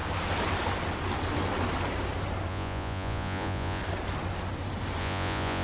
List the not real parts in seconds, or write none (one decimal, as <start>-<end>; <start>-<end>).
2.5-3.8; 5.0-5.6

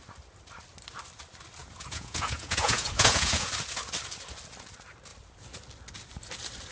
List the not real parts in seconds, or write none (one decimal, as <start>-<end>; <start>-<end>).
1.6-3.5

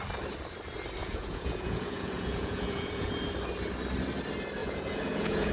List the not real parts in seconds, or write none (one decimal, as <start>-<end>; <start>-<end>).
1.0-3.1; 4.6-5.5